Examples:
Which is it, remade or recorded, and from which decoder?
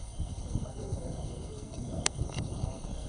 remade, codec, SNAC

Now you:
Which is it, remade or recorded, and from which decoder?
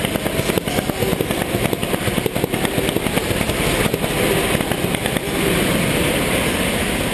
recorded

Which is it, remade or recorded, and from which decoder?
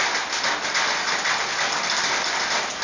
recorded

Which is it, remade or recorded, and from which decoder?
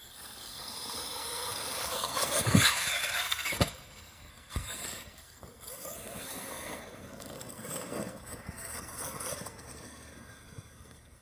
remade, codec, SNAC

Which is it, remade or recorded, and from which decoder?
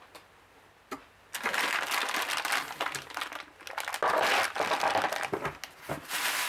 recorded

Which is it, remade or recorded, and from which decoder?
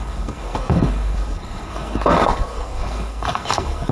remade, codec, SNAC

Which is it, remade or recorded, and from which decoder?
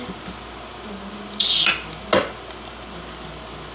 recorded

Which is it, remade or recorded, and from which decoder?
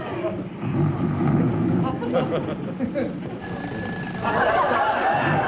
recorded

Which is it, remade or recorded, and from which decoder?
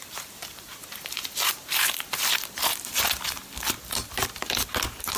recorded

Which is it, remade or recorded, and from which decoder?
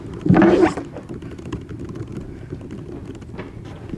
recorded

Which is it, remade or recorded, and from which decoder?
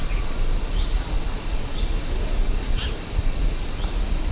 recorded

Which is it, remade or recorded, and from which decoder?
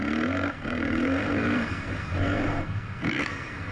remade, codec, SNAC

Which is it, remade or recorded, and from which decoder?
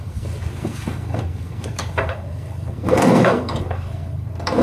remade, codec, SNAC